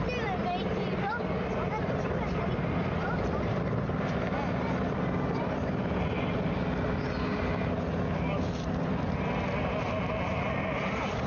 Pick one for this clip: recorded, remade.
recorded